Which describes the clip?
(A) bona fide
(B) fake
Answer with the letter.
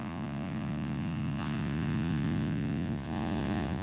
B